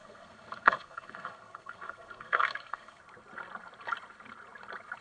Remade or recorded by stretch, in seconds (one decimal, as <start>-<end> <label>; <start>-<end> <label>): 0.0-3.0 remade; 3.0-5.0 recorded